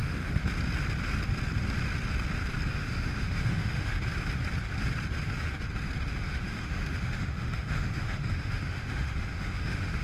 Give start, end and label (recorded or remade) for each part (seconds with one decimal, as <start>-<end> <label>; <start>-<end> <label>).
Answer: 0.0-0.4 remade; 0.4-2.7 recorded; 2.7-3.9 remade; 3.9-6.1 recorded; 6.1-10.0 remade